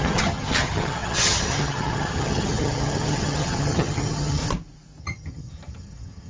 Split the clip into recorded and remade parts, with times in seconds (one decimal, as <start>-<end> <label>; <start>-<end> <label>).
0.0-4.4 remade; 4.4-5.0 recorded; 5.0-6.3 remade